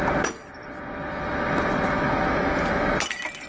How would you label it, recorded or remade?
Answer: recorded